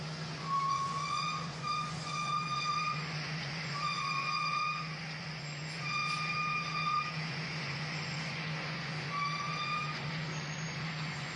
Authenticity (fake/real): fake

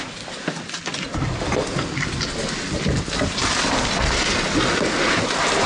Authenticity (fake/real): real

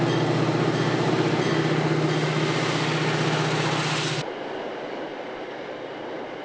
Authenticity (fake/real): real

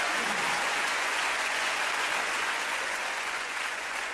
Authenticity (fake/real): fake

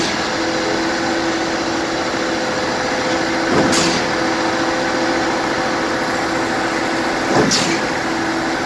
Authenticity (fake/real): real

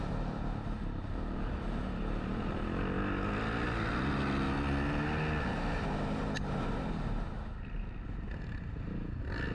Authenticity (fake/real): real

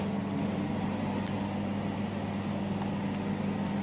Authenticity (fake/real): real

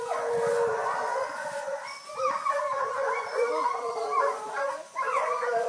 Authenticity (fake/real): fake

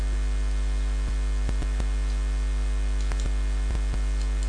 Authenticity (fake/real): real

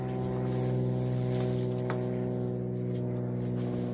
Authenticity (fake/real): real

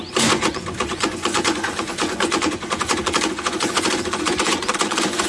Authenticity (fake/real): fake